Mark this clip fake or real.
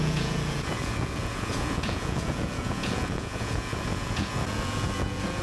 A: fake